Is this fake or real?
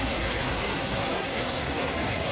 fake